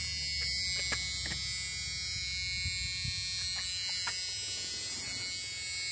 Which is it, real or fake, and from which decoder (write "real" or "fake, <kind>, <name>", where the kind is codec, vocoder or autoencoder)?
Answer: real